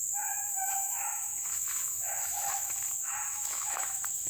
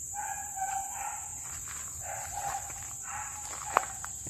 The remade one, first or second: first